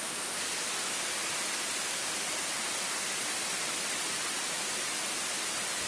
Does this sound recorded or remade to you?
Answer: recorded